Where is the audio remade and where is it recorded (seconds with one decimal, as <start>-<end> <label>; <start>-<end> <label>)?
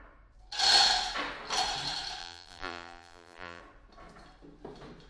0.0-2.2 recorded; 2.2-3.6 remade; 3.6-5.1 recorded